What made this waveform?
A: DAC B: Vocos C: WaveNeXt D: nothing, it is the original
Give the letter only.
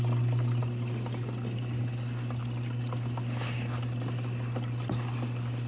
D